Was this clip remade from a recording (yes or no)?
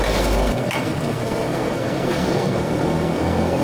yes